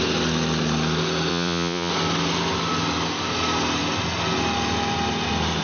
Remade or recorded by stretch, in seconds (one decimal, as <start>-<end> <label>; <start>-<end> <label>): 0.0-1.3 recorded; 1.3-1.9 remade; 1.9-5.6 recorded